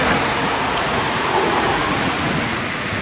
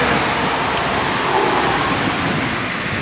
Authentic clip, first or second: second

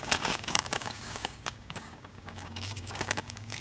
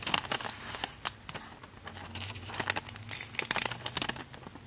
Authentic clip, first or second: second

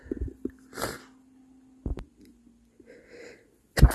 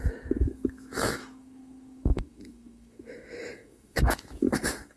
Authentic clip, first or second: first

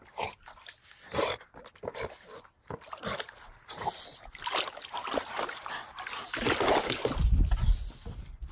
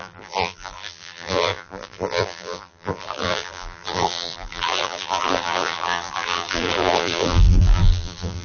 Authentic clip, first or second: first